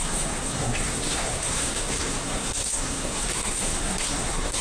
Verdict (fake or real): fake